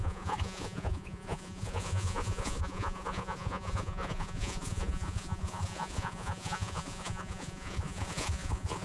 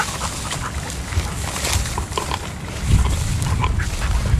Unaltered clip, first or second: second